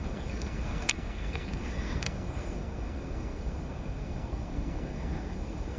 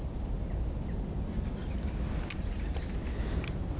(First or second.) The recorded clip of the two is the second